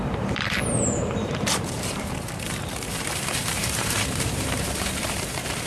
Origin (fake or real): fake